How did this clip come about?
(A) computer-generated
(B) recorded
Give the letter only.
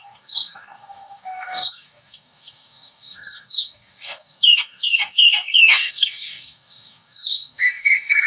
A